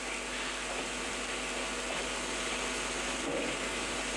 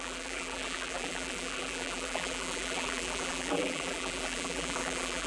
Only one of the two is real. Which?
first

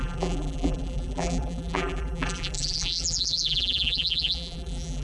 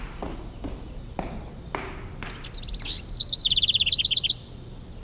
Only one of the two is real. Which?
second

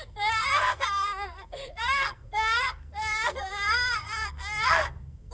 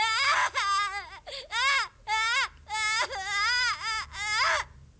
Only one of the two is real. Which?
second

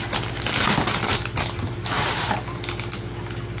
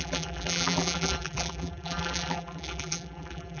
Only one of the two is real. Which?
first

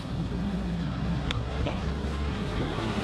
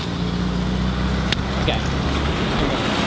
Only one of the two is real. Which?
second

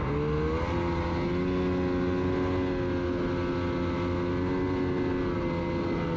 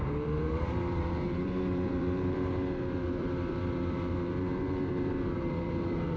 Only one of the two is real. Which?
first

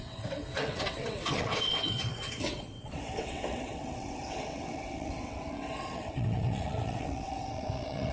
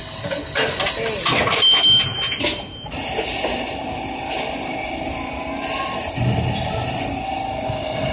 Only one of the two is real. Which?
second